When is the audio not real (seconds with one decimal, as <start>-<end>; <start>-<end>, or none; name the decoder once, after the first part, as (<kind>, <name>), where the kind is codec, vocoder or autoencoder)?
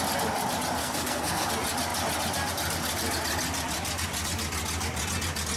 0.8-1.5 (codec, SNAC)